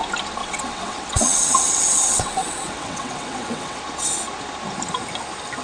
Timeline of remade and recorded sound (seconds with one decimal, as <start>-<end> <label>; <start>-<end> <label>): 0.0-0.4 recorded; 0.4-3.8 remade; 3.8-5.6 recorded